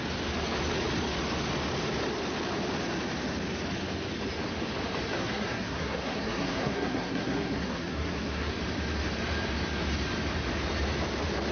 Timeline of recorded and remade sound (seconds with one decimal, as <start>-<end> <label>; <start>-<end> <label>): 0.0-5.2 recorded; 5.2-8.5 remade; 8.5-11.5 recorded